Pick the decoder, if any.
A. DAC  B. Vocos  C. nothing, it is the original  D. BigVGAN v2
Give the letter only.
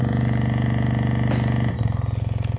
C